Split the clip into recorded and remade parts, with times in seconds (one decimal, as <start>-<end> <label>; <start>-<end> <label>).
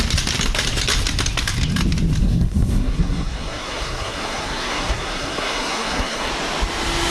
0.0-2.2 recorded; 2.2-6.3 remade; 6.3-7.1 recorded